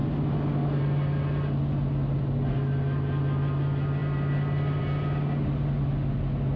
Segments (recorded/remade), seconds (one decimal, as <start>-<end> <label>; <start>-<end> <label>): 0.0-6.6 recorded